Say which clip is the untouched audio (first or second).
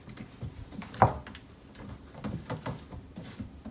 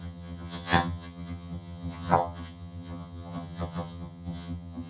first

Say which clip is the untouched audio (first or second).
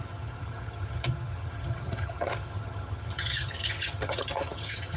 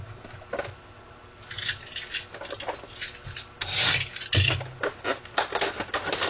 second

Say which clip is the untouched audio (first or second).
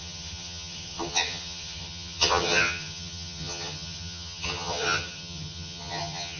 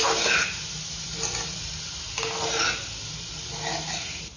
second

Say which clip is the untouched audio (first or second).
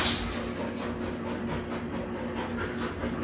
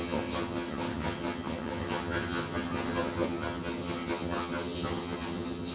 first